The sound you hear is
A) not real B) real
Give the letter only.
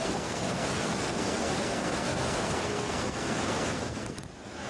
A